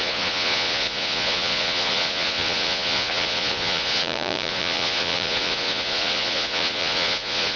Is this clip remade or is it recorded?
remade